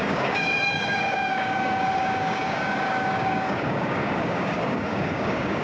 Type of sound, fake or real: fake